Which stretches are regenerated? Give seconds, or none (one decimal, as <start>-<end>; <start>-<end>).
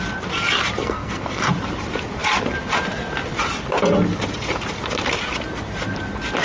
0.8-1.4